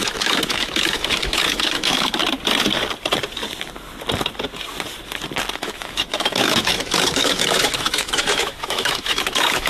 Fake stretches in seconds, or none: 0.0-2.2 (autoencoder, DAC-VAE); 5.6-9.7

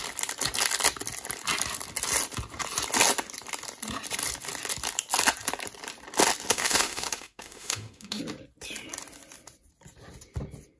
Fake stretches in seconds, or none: 6.5-8.2 (autoencoder, DAC-VAE)

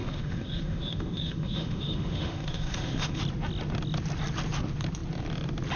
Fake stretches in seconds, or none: 0.0-3.2 (autoencoder, DAC-VAE)

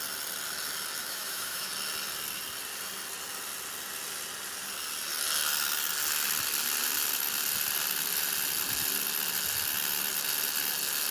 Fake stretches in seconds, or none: 1.0-1.7 (autoencoder, DAC-VAE)

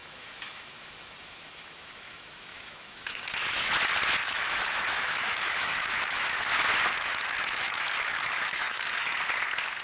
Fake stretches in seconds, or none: 0.0-3.7 (autoencoder, DAC-VAE); 4.2-6.5; 6.9-9.2

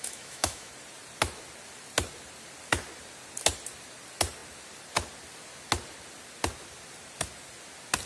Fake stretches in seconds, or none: 0.0-0.7 (autoencoder, DAC-VAE)